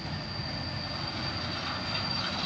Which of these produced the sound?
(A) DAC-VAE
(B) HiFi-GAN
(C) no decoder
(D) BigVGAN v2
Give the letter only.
C